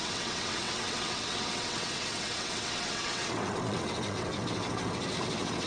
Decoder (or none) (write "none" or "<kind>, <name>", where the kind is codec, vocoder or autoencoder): vocoder, WaveNeXt